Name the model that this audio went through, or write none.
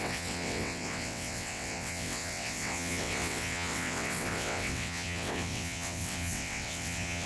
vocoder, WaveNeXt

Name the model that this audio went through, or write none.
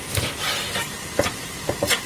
none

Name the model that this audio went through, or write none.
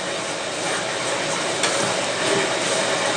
none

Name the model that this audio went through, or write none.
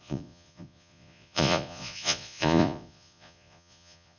vocoder, Vocos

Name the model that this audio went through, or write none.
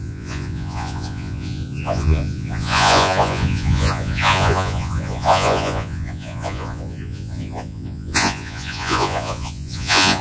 vocoder, Vocos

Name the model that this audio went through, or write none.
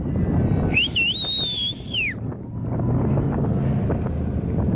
none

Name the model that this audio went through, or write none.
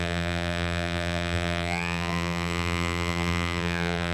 vocoder, BigVGAN v2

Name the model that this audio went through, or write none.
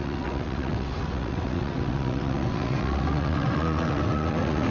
vocoder, WaveNeXt